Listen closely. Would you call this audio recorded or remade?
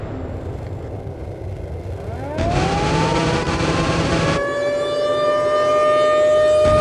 recorded